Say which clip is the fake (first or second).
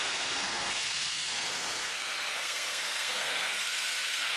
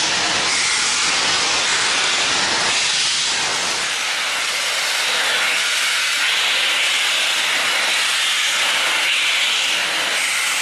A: first